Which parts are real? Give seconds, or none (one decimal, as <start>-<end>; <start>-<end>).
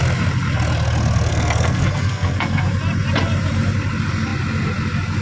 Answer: 0.0-1.3; 2.6-5.2